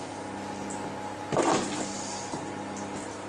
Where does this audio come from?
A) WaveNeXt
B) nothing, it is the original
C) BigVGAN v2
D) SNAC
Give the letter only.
B